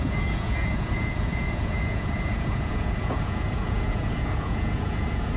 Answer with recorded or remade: remade